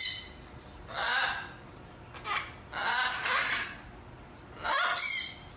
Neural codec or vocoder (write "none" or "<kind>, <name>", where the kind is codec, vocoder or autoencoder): none